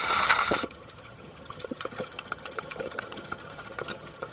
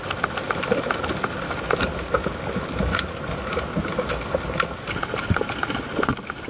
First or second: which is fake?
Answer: first